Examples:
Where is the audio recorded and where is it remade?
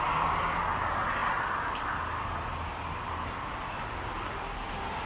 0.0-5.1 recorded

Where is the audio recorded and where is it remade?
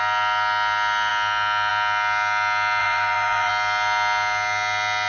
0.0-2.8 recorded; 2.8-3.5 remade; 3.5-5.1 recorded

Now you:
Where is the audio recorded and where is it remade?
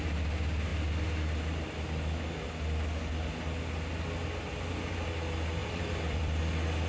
0.0-5.6 recorded; 5.6-6.4 remade; 6.4-6.9 recorded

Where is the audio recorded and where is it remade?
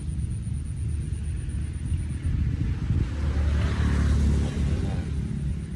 0.0-1.3 recorded; 1.3-2.0 remade; 2.0-5.8 recorded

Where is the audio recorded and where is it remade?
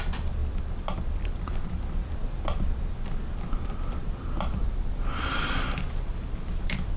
0.0-0.4 remade; 0.4-1.0 recorded; 1.0-2.0 remade; 2.0-5.1 recorded; 5.1-7.0 remade